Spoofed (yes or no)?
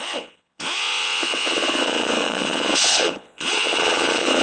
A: yes